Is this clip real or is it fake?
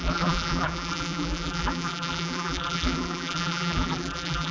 fake